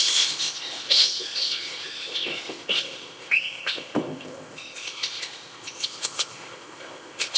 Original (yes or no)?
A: no